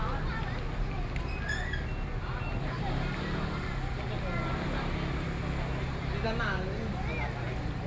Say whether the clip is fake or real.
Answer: real